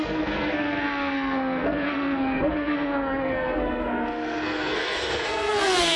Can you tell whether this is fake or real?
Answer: fake